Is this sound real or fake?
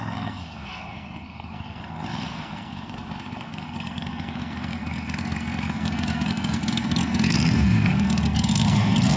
fake